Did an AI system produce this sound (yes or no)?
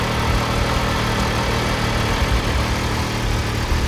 no